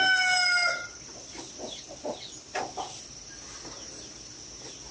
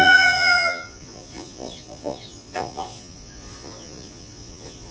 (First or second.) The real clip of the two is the first